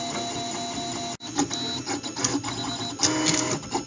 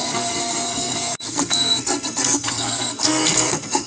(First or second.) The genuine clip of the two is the first